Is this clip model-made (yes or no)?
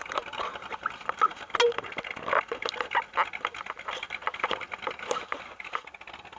no